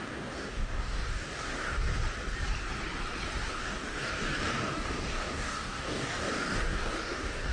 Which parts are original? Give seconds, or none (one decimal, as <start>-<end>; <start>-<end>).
1.9-3.5